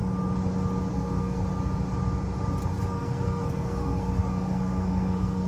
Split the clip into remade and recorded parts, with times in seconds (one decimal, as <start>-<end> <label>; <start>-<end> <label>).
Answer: 0.0-0.9 recorded; 0.9-1.4 remade; 1.4-2.8 recorded; 2.8-5.5 remade

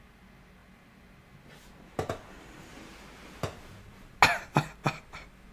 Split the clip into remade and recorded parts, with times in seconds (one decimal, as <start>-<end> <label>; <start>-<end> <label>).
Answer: 0.0-5.5 recorded

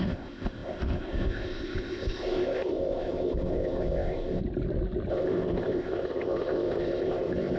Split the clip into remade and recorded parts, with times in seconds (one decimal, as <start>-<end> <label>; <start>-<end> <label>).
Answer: 0.0-4.4 remade; 4.4-5.1 recorded; 5.1-7.6 remade

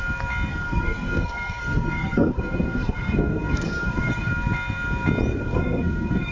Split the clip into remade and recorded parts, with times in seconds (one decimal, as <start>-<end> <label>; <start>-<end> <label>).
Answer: 0.0-0.5 recorded; 0.5-4.3 remade; 4.3-5.3 recorded; 5.3-6.3 remade

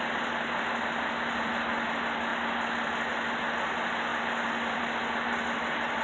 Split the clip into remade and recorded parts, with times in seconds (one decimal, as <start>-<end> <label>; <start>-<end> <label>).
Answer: 0.0-4.1 recorded; 4.1-5.0 remade; 5.0-6.0 recorded

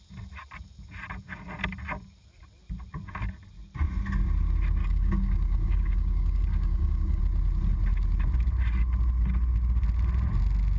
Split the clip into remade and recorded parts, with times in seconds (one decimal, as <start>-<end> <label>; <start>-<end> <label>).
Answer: 0.0-4.8 recorded; 4.8-7.2 remade; 7.2-10.8 recorded